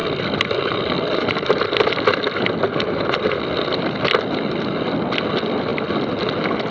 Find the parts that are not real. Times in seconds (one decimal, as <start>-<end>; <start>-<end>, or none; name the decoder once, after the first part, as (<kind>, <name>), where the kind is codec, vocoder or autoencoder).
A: none